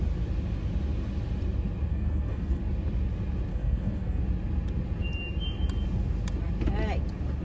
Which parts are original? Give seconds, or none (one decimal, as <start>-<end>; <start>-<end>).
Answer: 0.0-1.9; 2.6-3.5; 4.2-7.4